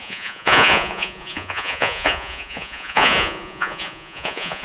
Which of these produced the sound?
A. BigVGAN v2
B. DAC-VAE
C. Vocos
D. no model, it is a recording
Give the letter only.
C